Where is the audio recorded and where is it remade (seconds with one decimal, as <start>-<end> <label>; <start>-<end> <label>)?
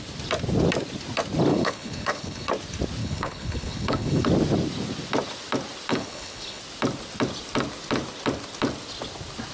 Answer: 0.0-1.5 recorded; 1.5-2.5 remade; 2.5-3.0 recorded; 3.0-4.3 remade; 4.3-5.9 recorded; 5.9-6.6 remade; 6.6-9.5 recorded